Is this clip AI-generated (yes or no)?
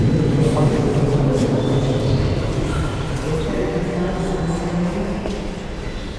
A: no